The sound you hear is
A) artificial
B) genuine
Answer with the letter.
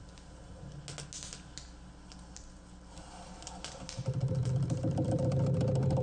B